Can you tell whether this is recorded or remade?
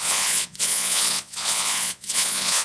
remade